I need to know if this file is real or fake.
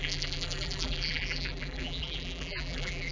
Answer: fake